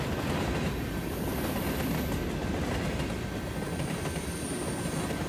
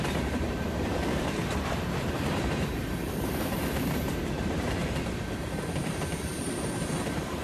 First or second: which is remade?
second